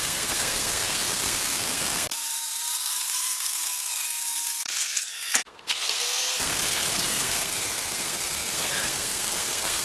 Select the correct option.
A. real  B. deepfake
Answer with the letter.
B